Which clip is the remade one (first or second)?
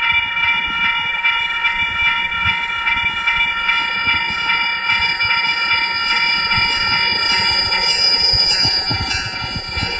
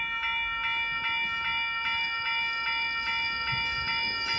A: first